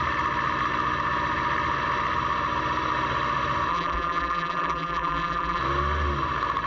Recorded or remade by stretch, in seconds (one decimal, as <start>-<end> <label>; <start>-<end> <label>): 0.0-3.7 recorded; 3.7-5.6 remade; 5.6-6.7 recorded